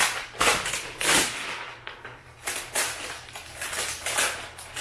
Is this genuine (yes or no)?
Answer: yes